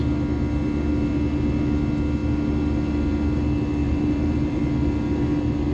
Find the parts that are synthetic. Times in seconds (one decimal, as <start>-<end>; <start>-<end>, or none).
3.8-4.6